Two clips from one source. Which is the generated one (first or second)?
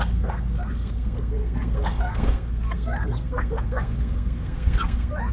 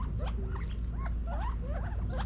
first